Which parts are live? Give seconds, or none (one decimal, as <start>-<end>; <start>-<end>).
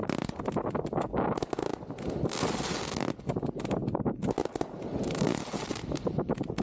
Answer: 0.0-6.6